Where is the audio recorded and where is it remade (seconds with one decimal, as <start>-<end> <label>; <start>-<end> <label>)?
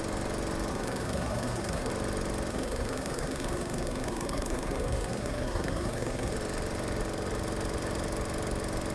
0.0-0.7 recorded; 0.7-1.9 remade; 1.9-2.5 recorded; 2.5-6.3 remade; 6.3-8.9 recorded